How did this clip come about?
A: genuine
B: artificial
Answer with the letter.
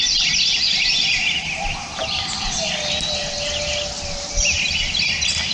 A